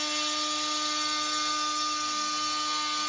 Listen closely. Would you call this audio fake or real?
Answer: real